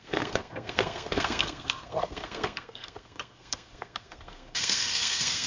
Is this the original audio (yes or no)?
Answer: no